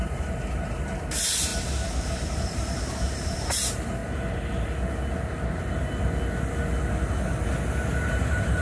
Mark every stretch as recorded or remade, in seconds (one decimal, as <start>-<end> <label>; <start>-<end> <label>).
0.0-1.5 remade; 1.5-2.0 recorded; 2.0-4.0 remade; 4.0-8.1 recorded; 8.1-8.6 remade

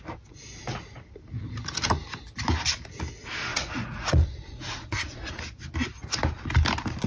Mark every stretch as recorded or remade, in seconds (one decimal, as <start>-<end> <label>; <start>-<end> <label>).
0.0-3.5 recorded; 3.5-5.4 remade; 5.4-7.1 recorded

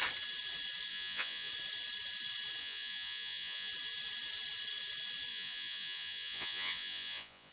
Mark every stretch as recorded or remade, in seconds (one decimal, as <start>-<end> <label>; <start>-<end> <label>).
0.0-0.9 recorded; 0.9-1.5 remade; 1.5-2.6 recorded; 2.6-3.7 remade; 3.7-5.3 recorded; 5.3-7.5 remade